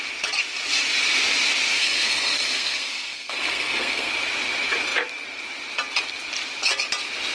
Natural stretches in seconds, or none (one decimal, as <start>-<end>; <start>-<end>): 0.0-1.8; 4.1-7.3